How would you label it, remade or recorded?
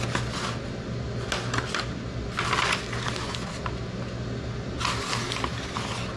recorded